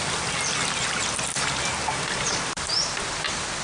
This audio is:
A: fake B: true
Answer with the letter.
B